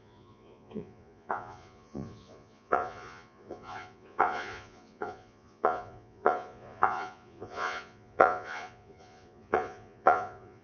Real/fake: fake